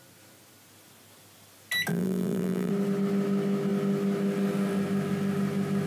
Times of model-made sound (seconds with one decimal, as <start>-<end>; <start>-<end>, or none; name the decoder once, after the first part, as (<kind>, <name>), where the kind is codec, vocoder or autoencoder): 1.9-2.7 (vocoder, BigVGAN v2)

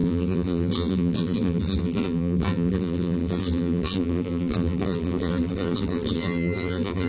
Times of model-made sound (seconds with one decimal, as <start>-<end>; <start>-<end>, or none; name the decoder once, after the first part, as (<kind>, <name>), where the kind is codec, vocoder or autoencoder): 0.0-7.1 (vocoder, BigVGAN v2)

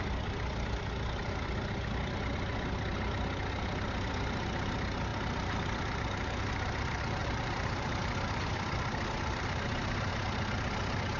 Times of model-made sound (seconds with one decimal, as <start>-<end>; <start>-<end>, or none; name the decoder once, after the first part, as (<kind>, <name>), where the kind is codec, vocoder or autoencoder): 5.1-6.4 (vocoder, BigVGAN v2); 7.2-10.1